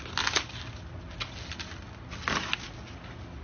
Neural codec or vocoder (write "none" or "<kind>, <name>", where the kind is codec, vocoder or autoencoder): none